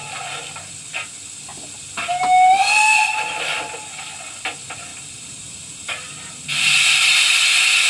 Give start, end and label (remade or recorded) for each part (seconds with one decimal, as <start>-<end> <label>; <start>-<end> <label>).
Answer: 0.0-2.6 recorded; 2.6-3.1 remade; 3.1-4.9 recorded; 4.9-6.3 remade; 6.3-7.9 recorded